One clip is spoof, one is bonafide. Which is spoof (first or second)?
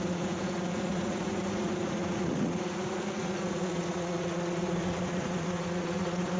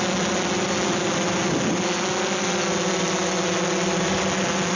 first